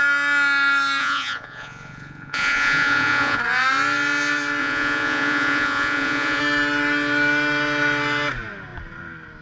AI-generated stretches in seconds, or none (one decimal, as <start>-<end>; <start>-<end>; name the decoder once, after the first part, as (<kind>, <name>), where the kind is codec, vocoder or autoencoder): 1.0-3.4 (vocoder, Vocos); 4.6-6.4